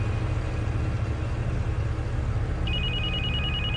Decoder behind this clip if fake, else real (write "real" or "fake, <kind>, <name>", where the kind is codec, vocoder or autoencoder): real